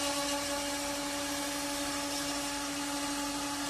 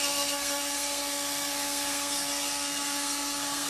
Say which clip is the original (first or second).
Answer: first